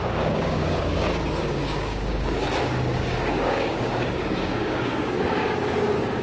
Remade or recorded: remade